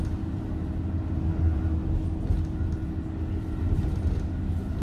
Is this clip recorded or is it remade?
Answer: recorded